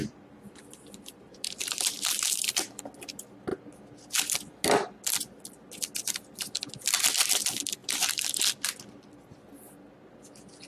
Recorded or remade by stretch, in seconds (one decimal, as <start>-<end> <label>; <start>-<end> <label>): 0.0-2.7 remade; 2.7-7.8 recorded; 7.8-8.4 remade; 8.4-10.7 recorded